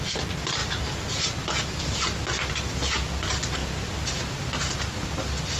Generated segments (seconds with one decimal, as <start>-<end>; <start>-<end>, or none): none